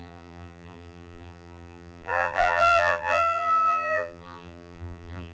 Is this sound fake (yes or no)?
yes